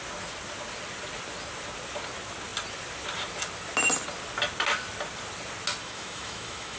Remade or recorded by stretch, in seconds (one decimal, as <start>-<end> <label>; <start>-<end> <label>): 0.0-5.8 recorded; 5.8-6.8 remade